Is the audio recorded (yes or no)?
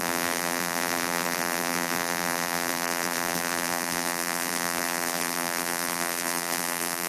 no